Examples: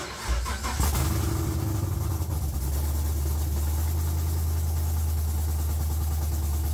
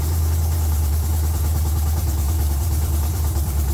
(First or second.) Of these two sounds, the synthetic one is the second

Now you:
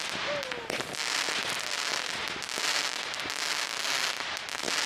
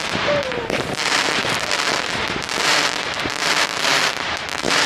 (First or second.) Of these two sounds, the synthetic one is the second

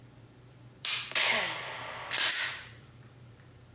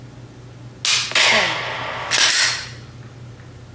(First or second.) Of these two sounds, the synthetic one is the first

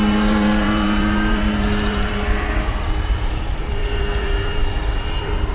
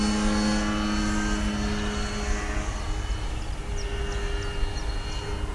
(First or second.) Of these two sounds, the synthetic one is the first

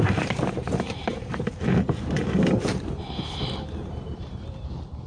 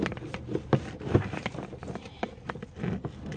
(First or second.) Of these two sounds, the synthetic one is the first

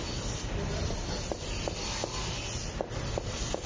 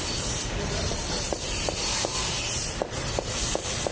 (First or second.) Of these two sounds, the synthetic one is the second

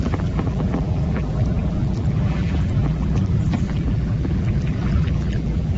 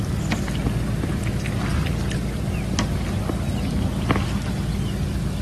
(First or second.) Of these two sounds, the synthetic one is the first